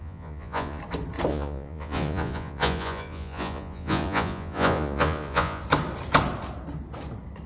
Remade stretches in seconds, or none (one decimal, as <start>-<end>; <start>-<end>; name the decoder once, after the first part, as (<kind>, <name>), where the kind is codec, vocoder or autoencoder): 0.0-0.8 (vocoder, Vocos); 1.3-5.6